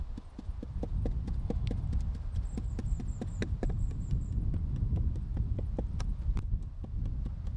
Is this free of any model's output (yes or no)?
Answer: yes